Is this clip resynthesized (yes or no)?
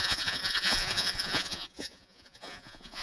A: yes